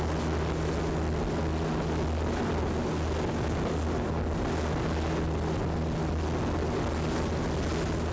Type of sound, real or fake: real